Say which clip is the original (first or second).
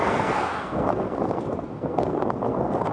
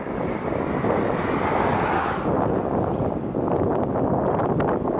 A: second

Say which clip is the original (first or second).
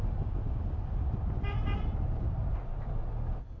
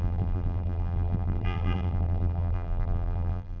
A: first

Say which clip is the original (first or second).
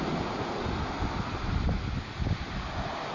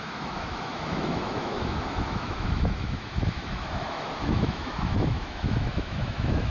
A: first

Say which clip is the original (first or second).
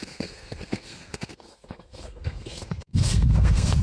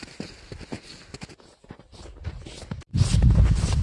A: second